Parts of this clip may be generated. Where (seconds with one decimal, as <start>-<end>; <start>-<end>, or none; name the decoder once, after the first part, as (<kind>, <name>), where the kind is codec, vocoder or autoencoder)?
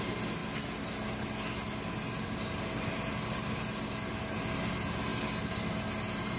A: none